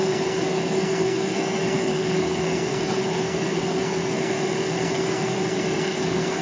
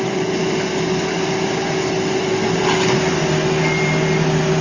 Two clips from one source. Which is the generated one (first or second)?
first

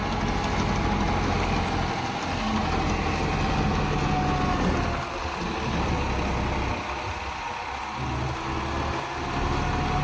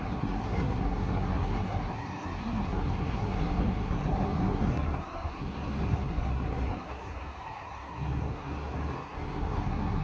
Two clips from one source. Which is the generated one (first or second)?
second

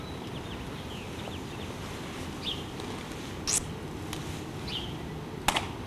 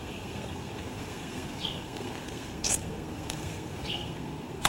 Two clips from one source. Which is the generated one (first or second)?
second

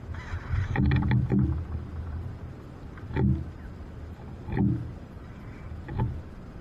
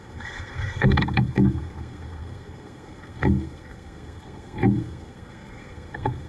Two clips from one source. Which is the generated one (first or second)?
second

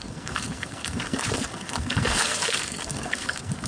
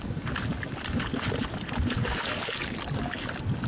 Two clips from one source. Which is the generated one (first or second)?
first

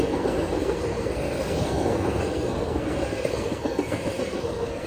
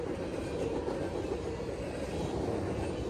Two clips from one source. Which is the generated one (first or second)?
first